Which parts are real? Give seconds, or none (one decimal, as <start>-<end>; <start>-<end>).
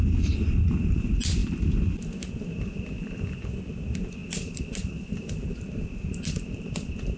0.0-7.2